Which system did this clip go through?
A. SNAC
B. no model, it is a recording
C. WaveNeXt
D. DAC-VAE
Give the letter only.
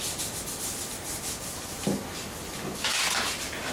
B